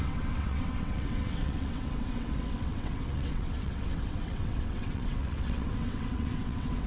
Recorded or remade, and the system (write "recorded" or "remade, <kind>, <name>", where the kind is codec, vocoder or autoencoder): remade, vocoder, WaveNeXt